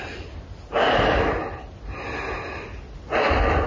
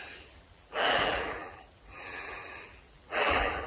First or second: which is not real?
second